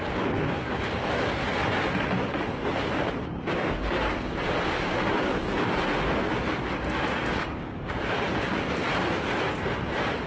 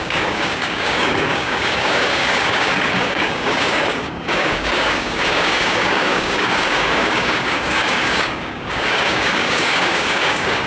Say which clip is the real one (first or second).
first